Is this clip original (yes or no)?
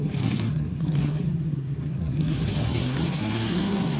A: no